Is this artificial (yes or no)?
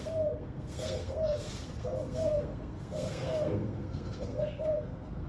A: yes